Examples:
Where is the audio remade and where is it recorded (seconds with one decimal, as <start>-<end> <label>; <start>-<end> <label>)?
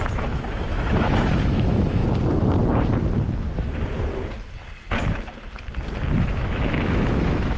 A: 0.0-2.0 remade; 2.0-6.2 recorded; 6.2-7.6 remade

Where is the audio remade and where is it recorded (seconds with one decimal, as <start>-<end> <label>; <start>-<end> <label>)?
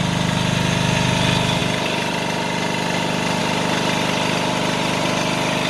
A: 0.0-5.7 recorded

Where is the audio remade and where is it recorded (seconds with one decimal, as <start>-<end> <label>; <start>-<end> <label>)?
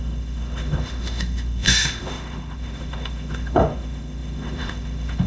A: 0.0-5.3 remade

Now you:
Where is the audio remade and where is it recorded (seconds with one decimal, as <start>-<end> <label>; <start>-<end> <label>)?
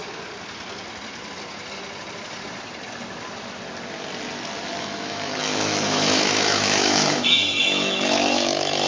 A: 0.0-4.8 recorded; 4.8-8.9 remade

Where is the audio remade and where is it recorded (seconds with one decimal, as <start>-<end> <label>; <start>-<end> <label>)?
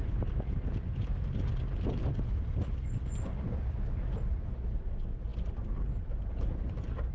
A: 0.0-7.1 recorded